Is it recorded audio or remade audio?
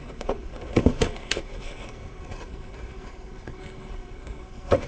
remade